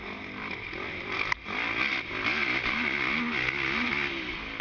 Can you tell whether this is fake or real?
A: real